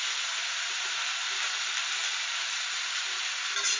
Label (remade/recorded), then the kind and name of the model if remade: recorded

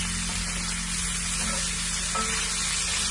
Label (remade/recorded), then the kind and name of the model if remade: recorded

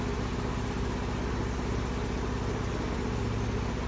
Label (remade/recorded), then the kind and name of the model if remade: recorded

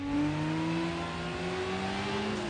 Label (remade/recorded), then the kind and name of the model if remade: recorded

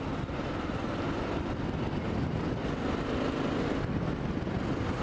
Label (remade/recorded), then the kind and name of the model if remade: recorded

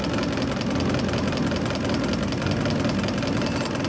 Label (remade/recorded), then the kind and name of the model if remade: recorded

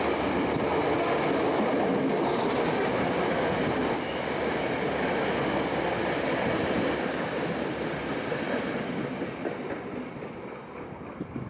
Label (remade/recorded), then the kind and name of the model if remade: recorded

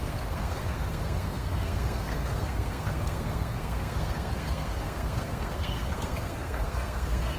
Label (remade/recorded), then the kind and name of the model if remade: remade, codec, SNAC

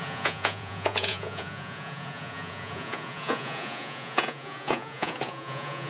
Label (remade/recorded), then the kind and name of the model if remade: remade, vocoder, Vocos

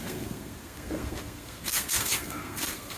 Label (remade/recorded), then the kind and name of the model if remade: remade, codec, SNAC